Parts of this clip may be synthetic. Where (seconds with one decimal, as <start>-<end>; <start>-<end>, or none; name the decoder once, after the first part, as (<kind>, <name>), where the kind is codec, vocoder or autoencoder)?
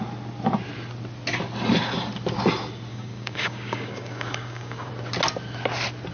2.9-4.9 (codec, DAC)